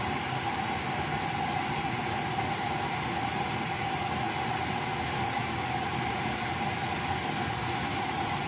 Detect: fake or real real